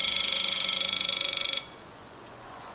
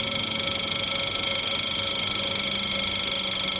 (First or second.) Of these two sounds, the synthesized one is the first